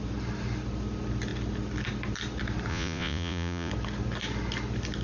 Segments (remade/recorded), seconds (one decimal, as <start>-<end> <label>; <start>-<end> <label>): 0.0-2.7 recorded; 2.7-3.7 remade; 3.7-5.0 recorded